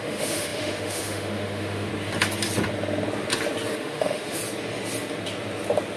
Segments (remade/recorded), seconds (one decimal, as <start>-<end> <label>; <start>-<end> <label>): 0.0-1.9 remade; 1.9-3.8 recorded; 3.8-4.4 remade; 4.4-6.0 recorded